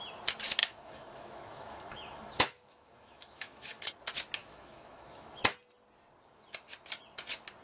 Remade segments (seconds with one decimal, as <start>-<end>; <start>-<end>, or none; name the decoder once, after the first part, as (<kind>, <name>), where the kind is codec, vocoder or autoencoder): 0.6-3.9 (autoencoder, DAC-VAE); 4.4-5.4